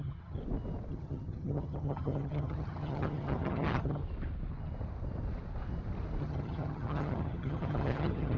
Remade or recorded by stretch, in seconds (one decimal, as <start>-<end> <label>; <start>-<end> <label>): 0.0-0.4 remade; 0.4-0.9 recorded; 0.9-4.0 remade; 4.0-6.2 recorded; 6.2-8.4 remade